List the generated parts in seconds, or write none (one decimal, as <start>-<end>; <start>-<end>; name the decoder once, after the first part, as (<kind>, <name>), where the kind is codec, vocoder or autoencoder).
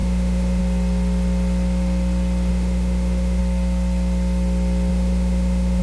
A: 0.0-0.6 (autoencoder, DAC-VAE); 2.5-3.4; 4.9-5.8